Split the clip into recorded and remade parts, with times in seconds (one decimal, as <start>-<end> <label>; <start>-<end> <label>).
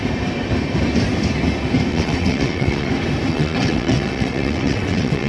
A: 0.0-1.9 recorded; 1.9-2.9 remade; 2.9-3.3 recorded; 3.3-5.3 remade